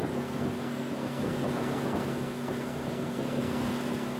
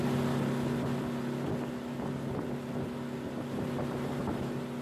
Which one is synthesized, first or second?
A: first